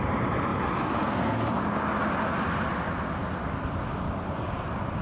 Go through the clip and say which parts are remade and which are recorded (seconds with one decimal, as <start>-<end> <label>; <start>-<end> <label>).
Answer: 0.0-5.0 recorded